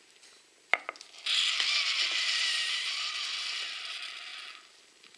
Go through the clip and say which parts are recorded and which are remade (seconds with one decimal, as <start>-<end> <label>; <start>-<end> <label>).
0.0-5.2 recorded